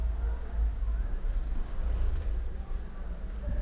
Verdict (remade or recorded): recorded